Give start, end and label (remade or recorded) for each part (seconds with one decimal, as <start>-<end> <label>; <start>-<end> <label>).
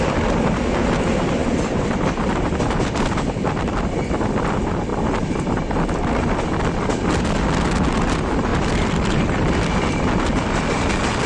0.0-1.4 recorded; 1.4-3.4 remade; 3.4-8.5 recorded; 8.5-9.7 remade; 9.7-11.3 recorded